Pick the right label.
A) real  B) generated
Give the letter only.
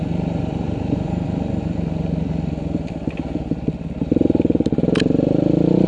A